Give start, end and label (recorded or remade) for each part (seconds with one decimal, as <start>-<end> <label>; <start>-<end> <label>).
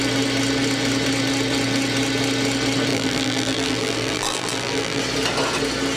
0.0-2.9 recorded; 2.9-5.0 remade; 5.0-6.0 recorded